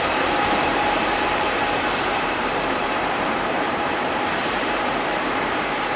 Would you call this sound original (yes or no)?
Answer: no